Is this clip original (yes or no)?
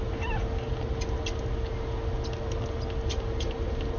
yes